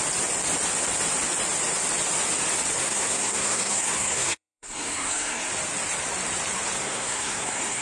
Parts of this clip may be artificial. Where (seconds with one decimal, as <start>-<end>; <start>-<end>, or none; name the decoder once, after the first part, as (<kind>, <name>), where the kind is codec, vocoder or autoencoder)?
2.8-5.5 (codec, SNAC); 6.8-7.8